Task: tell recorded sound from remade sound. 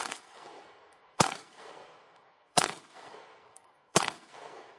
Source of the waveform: remade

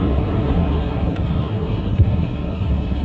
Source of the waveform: remade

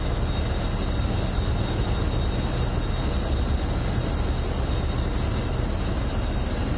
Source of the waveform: recorded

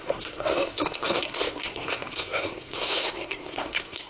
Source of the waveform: remade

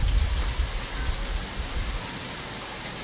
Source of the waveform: recorded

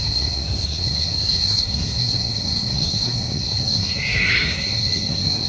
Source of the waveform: remade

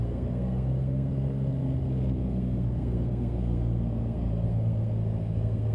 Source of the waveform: remade